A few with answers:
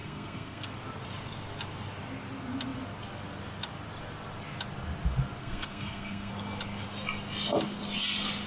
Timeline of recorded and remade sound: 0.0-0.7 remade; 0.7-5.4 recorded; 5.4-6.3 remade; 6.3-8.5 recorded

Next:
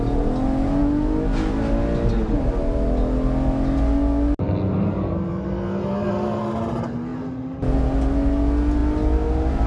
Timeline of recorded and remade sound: 0.0-9.7 recorded

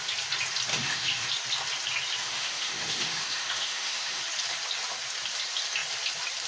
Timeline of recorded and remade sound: 0.0-0.7 recorded; 0.7-1.3 remade; 1.3-2.2 recorded; 2.2-4.2 remade; 4.2-6.5 recorded

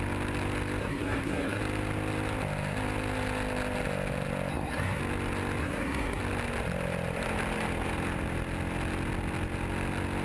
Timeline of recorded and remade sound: 0.0-0.8 recorded; 0.8-1.6 remade; 1.6-4.5 recorded; 4.5-5.0 remade; 5.0-5.6 recorded; 5.6-6.2 remade; 6.2-10.2 recorded